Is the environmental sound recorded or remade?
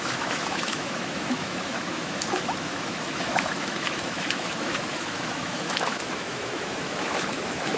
remade